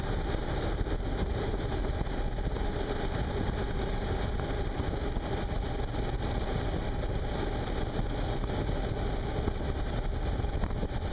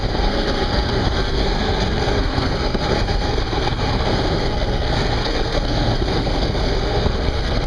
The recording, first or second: first